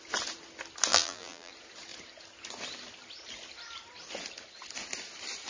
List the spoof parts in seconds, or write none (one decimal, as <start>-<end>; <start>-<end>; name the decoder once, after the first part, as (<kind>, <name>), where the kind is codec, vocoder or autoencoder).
0.9-1.5 (vocoder, BigVGAN v2)